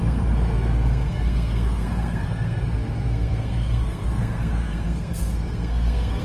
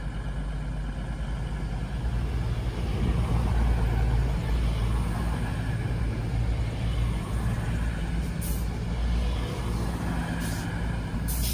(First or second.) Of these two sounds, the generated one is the first